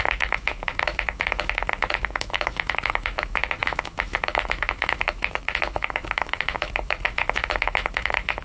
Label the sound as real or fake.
fake